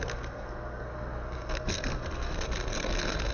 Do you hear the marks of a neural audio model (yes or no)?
yes